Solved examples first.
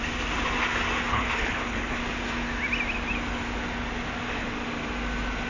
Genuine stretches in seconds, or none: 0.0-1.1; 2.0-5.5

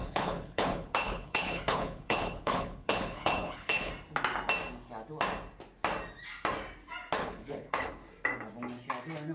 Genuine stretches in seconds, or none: 3.9-7.2; 7.9-9.3

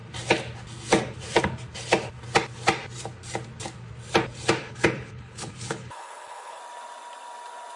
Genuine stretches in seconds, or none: 0.0-4.6; 6.6-7.8

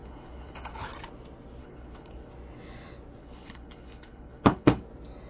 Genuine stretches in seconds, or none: 0.8-1.6; 2.3-3.2; 4.8-5.3

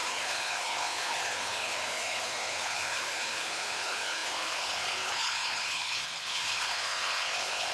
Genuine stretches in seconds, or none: none

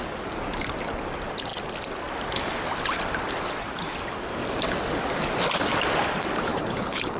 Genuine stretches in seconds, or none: 0.0-6.5

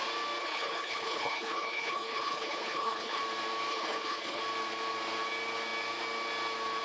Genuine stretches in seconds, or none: 0.0-0.4; 3.2-3.7; 4.4-6.8